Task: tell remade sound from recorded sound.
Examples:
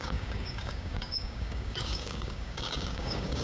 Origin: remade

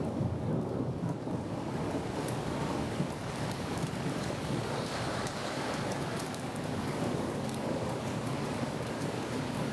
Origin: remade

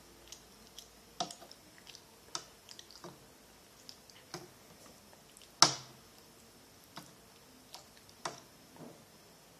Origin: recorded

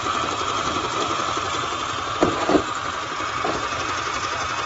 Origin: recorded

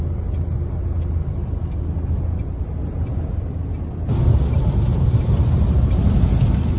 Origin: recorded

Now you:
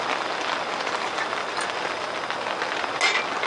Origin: recorded